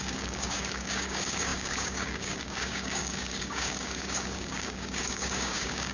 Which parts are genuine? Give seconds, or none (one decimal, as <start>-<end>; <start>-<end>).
none